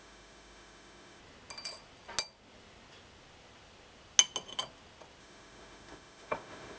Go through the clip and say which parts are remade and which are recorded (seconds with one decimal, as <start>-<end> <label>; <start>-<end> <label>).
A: 0.0-1.2 remade; 1.2-5.2 recorded; 5.2-6.8 remade